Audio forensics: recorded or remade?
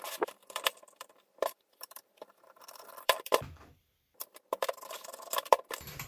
remade